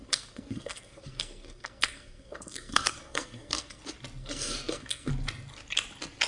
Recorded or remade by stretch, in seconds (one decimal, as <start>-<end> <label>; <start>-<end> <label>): 0.0-3.8 remade; 3.8-4.2 recorded; 4.2-5.1 remade; 5.1-6.3 recorded